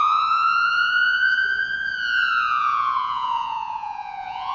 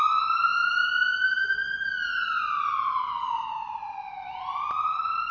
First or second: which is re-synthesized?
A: first